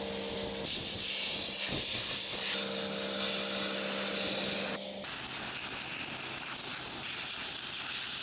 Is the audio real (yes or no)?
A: yes